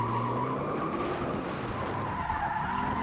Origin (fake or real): real